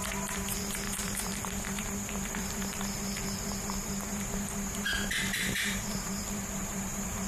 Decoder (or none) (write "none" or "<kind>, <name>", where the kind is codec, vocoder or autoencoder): vocoder, BigVGAN v2